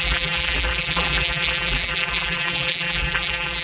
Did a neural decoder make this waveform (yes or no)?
yes